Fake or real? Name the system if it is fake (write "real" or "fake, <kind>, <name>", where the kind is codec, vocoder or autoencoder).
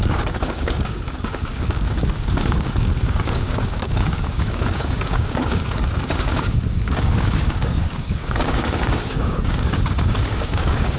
fake, codec, DAC